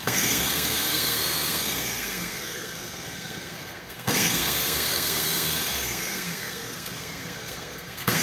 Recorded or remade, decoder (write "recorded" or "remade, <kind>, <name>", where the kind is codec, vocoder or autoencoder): remade, codec, SNAC